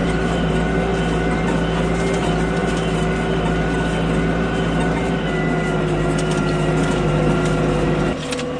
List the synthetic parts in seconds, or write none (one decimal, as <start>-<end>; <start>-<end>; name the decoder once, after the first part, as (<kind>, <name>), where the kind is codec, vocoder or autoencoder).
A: 0.0-0.5 (vocoder, BigVGAN v2)